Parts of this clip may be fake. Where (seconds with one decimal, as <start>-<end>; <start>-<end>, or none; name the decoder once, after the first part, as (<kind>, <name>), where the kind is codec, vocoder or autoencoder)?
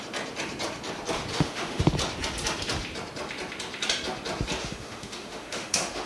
1.3-1.8 (autoencoder, DAC-VAE); 4.6-6.1